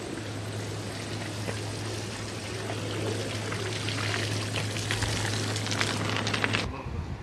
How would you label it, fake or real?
real